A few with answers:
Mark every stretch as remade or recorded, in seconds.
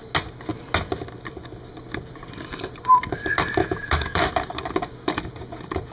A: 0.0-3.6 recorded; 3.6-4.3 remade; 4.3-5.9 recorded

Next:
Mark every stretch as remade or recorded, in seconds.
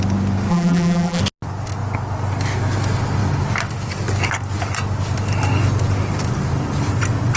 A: 0.0-0.5 recorded; 0.5-1.2 remade; 1.2-7.4 recorded